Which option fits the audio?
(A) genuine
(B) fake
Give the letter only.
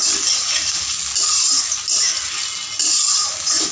A